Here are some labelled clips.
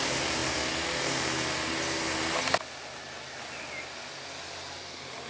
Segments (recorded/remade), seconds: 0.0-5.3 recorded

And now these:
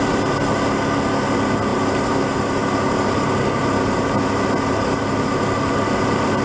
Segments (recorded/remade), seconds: 0.0-6.4 recorded

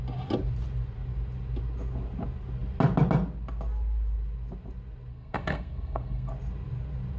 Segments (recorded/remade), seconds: 0.0-5.1 recorded; 5.1-6.3 remade; 6.3-7.2 recorded

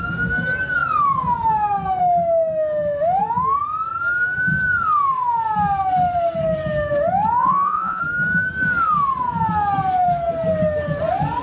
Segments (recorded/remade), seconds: 0.0-7.4 recorded; 7.4-8.0 remade; 8.0-11.4 recorded

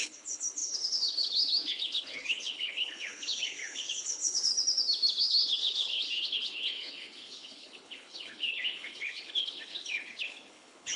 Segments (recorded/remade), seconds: 0.0-4.5 remade; 4.5-5.2 recorded; 5.2-11.0 remade

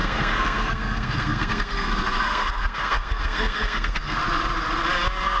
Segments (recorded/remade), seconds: 0.0-4.2 remade; 4.2-5.4 recorded

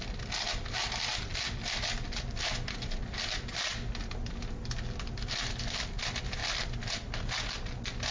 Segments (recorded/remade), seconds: 0.0-8.1 recorded